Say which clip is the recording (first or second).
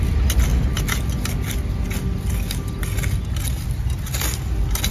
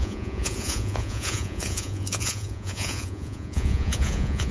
first